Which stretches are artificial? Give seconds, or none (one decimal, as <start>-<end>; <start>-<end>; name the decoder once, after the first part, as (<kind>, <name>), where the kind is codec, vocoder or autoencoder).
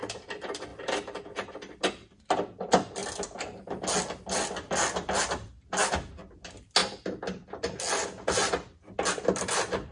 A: none